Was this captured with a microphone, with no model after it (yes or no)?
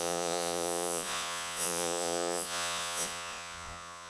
no